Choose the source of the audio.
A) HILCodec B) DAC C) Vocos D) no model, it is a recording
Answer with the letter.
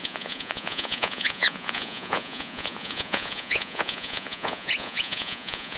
C